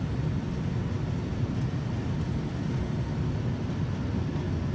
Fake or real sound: real